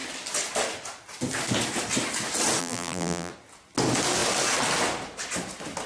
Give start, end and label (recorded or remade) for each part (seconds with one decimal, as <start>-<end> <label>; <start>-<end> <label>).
0.0-2.6 recorded; 2.6-3.3 remade; 3.3-5.9 recorded